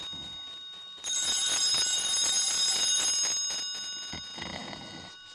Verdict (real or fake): real